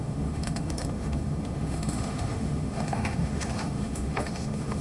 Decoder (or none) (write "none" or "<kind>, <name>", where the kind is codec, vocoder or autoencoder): autoencoder, DAC-VAE